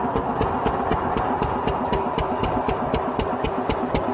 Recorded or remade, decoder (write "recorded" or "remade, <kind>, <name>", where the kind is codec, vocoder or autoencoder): recorded